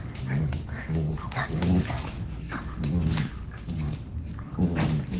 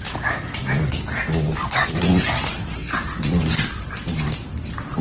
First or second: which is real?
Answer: second